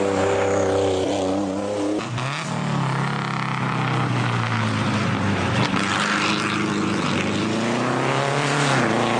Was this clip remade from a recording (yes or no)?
no